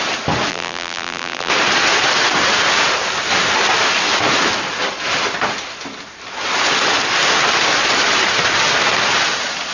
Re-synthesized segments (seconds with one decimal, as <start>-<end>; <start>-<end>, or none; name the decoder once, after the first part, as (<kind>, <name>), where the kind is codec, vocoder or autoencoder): 0.5-1.5 (vocoder, BigVGAN v2)